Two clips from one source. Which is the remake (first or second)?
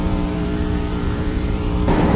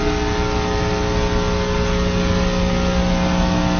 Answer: first